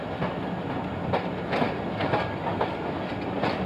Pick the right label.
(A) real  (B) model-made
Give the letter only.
A